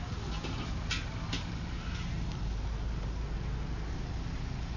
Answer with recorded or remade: recorded